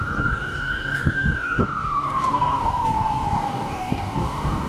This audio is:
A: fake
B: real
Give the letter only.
A